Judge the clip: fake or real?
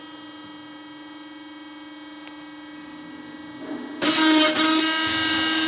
real